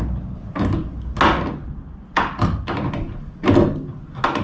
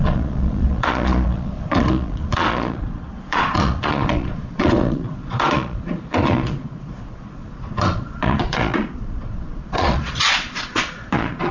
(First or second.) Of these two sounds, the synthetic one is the second